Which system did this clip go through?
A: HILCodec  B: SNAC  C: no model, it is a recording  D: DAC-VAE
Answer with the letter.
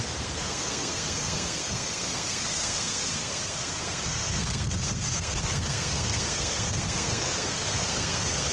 B